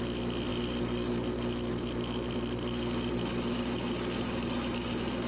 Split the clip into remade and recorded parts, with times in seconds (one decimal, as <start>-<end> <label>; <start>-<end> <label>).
0.0-5.3 recorded